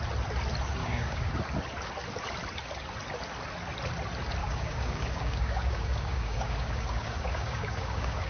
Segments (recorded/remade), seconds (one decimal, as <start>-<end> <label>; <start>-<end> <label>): 0.0-0.8 recorded; 0.8-1.3 remade; 1.3-4.4 recorded; 4.4-8.3 remade